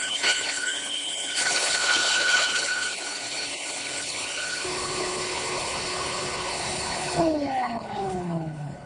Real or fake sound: fake